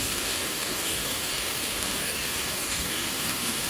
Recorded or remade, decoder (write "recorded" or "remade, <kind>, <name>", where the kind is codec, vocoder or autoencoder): remade, codec, DAC